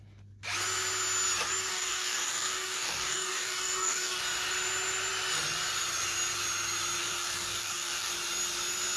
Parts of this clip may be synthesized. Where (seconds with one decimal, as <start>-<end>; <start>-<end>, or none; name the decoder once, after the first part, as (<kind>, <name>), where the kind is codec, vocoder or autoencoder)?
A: 1.7-4.2 (codec, DAC); 7.0-8.1